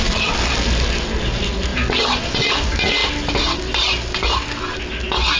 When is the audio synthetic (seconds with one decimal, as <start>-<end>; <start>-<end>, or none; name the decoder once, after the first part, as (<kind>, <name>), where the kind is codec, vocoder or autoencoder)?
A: none